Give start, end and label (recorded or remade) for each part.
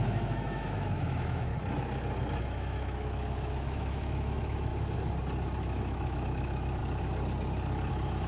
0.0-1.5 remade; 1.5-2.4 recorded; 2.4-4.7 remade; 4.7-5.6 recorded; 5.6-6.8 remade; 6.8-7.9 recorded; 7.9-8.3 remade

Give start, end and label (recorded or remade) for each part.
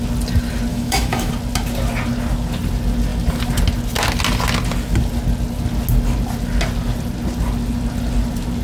0.0-0.7 recorded; 0.7-1.3 remade; 1.3-8.6 recorded